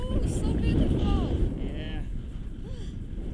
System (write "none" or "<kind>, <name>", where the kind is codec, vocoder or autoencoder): vocoder, BigVGAN v2